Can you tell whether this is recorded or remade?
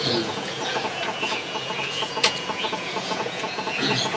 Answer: remade